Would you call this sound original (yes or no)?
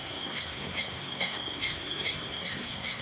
no